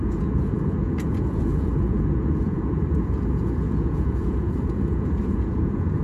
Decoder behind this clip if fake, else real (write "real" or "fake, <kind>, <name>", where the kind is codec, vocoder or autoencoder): fake, vocoder, Vocos